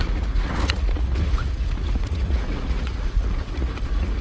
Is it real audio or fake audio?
fake